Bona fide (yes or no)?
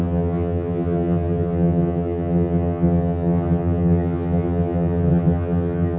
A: no